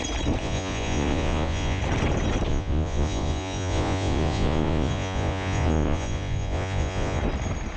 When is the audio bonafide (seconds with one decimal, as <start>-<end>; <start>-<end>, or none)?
0.0-0.4; 1.8-2.5; 7.2-7.8